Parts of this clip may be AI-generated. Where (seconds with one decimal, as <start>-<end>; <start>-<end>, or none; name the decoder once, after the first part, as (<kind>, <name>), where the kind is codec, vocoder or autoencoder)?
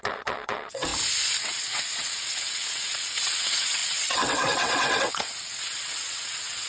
0.0-0.9 (vocoder, WaveNeXt); 1.4-6.7